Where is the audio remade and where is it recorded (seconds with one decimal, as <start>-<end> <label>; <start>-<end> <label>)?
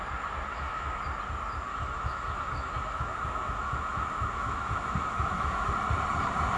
0.0-0.5 recorded; 0.5-1.0 remade; 1.0-1.7 recorded; 1.7-5.7 remade; 5.7-6.6 recorded